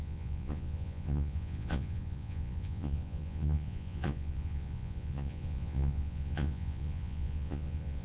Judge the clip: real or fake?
fake